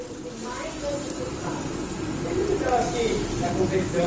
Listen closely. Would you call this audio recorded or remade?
recorded